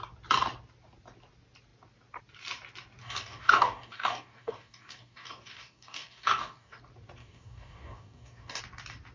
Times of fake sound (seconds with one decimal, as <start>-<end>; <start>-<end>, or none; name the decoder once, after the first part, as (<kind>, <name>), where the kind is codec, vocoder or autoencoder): 3.0-6.8 (codec, DAC); 7.2-8.6